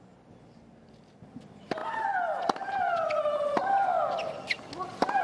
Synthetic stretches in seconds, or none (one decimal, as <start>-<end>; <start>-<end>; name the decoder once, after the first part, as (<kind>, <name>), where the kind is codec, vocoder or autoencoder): none